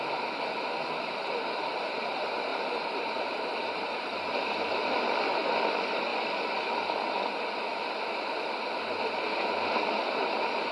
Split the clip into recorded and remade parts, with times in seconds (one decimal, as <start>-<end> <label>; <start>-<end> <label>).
0.0-2.5 recorded; 2.5-5.6 remade; 5.6-10.7 recorded